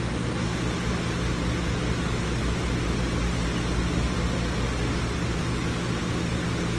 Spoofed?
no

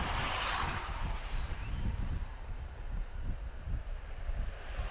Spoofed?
yes